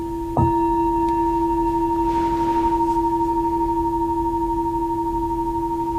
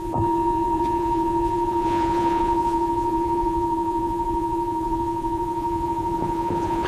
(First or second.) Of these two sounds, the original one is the first